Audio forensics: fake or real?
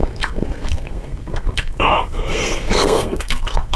fake